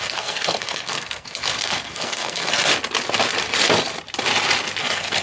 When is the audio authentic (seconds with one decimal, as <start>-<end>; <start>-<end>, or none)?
2.7-4.8